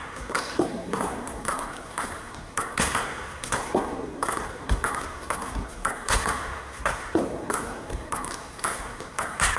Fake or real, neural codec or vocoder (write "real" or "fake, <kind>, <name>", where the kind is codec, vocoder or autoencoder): fake, codec, SNAC